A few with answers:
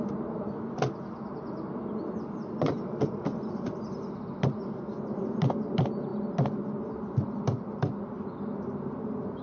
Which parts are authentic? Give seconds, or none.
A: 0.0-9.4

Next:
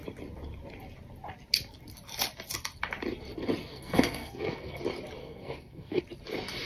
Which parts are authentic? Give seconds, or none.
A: 0.0-3.6; 4.8-5.2; 6.0-6.7

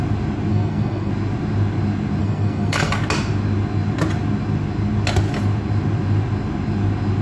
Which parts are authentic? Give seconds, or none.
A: 0.0-0.5; 1.1-2.2; 3.0-7.2